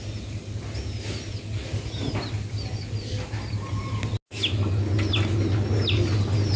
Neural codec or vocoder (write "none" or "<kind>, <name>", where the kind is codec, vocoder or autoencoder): none